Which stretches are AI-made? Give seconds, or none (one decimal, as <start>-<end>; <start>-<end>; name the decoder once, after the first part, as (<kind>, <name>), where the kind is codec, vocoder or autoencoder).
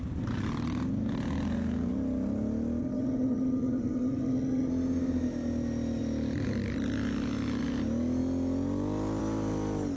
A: 2.8-4.7 (vocoder, HiFi-GAN)